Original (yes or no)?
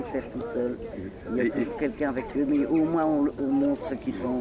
yes